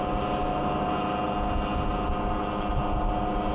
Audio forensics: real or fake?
real